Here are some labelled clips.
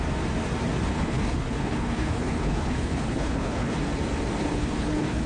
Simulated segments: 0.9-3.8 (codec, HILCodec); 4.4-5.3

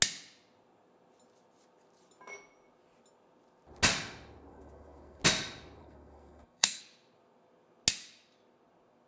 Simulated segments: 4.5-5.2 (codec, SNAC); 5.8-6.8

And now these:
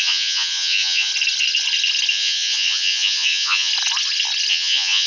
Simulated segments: 0.0-1.1 (vocoder, Vocos); 2.1-3.7; 4.5-5.1